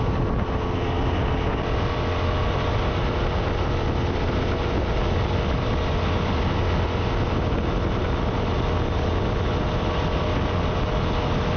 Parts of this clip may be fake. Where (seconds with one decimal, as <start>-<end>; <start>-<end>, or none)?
none